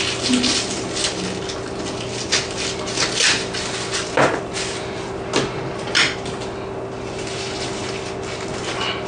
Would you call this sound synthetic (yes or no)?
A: no